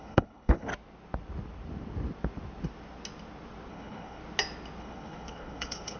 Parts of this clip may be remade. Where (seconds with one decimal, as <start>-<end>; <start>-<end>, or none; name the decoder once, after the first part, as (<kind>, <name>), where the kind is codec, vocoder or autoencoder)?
0.0-0.7 (codec, HILCodec); 3.7-4.2; 4.8-6.0